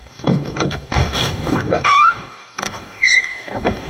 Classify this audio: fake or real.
fake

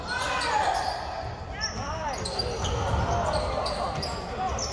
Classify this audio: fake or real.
real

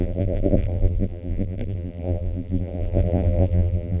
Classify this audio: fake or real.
fake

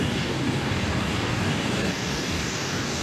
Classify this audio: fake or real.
fake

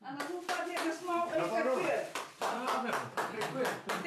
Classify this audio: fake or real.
real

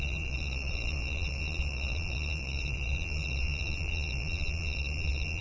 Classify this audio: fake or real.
fake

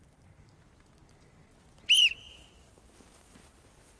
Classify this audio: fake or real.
real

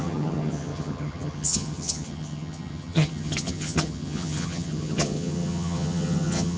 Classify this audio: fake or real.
fake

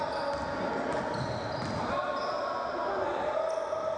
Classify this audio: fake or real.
real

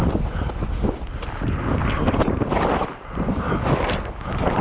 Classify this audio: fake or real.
real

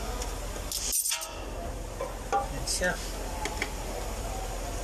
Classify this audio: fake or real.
real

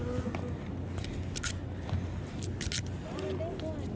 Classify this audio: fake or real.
real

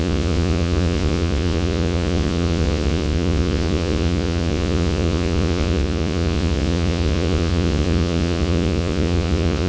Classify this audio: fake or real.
fake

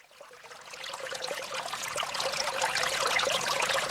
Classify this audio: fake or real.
fake